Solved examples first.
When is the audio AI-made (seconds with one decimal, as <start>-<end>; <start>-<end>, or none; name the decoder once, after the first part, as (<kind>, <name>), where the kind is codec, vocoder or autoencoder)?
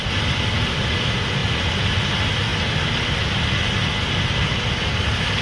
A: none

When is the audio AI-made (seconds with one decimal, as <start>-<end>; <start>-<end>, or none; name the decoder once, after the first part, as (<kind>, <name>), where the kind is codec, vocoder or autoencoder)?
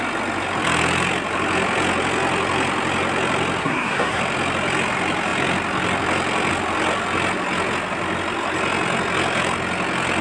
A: 3.6-4.2 (codec, SNAC)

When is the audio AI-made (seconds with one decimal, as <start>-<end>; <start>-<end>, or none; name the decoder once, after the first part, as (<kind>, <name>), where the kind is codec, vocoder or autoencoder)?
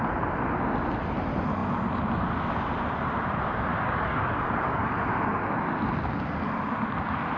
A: 3.7-5.0 (codec, DAC)